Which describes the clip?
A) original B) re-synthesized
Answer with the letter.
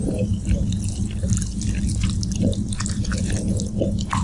A